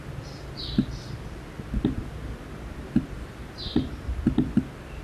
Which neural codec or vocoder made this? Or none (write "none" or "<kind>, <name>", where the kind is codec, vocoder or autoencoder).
none